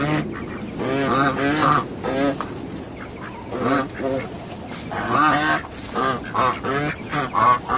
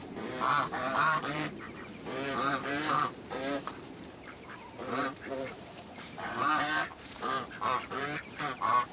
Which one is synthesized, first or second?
second